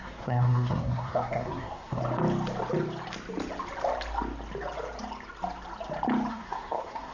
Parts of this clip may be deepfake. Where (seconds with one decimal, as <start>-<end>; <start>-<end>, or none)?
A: 0.0-2.0; 6.3-7.1